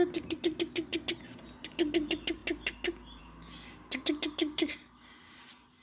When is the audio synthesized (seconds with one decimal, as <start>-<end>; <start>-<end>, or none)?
none